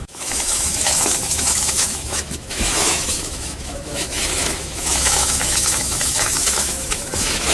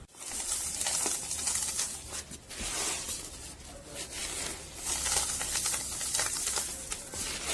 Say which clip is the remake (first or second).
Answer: first